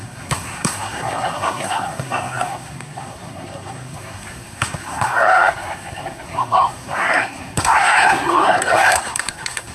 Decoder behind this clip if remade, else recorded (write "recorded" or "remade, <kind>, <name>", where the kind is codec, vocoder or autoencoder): remade, codec, SNAC